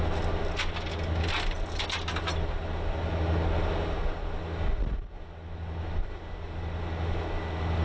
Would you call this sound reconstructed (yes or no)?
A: no